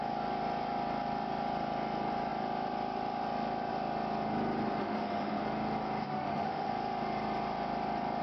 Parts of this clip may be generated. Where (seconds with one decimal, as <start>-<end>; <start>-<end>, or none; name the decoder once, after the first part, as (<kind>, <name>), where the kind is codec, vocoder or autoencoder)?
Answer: 4.8-5.4 (autoencoder, DAC-VAE); 6.0-6.7

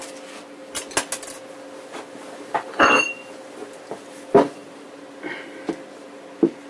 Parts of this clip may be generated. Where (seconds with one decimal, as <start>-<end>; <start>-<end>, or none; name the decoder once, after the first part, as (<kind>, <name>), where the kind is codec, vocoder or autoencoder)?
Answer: none